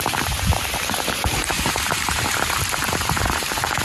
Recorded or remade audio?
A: remade